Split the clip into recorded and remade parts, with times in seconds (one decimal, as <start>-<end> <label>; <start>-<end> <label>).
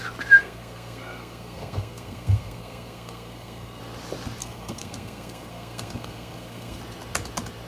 0.0-0.4 recorded; 0.4-3.8 remade; 3.8-4.4 recorded; 4.4-6.8 remade; 6.8-7.7 recorded